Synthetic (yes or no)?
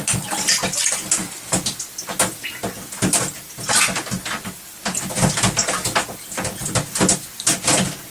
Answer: no